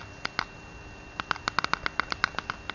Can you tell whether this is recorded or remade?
recorded